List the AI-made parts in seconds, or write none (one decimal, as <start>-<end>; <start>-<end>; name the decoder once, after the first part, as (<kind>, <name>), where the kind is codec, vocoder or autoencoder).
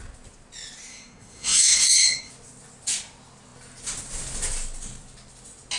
0.9-2.3 (codec, SNAC)